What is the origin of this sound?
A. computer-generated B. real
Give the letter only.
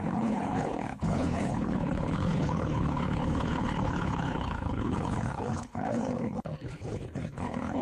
A